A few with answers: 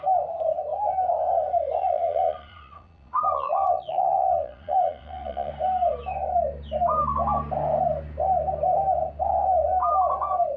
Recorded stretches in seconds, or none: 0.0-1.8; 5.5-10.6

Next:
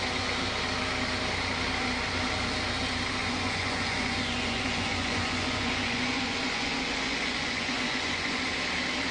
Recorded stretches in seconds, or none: 0.0-3.2; 8.4-9.1

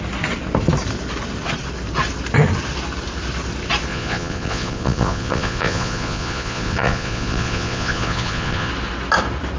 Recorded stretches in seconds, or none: 0.0-3.9; 8.7-9.6

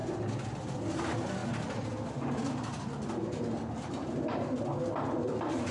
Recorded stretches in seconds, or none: 0.0-5.7

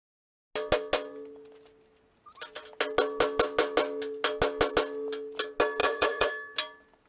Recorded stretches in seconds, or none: 0.0-5.8; 6.3-7.1

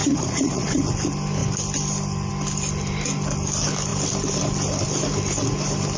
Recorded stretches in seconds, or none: 0.8-6.0

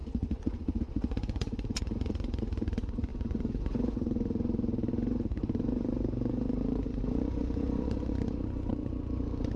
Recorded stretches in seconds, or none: none

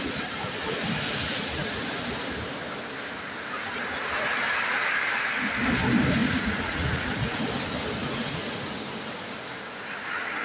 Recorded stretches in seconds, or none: 0.0-1.2; 1.8-6.2; 7.4-8.0; 8.7-10.4